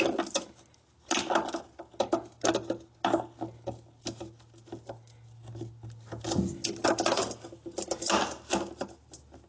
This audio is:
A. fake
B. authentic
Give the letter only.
B